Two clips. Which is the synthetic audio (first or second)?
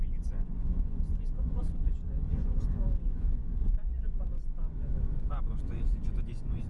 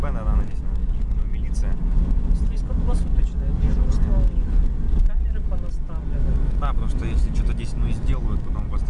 first